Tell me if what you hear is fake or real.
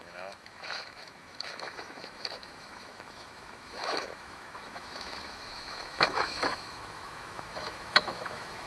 fake